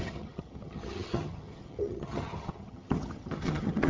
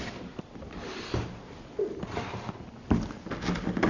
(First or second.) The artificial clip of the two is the first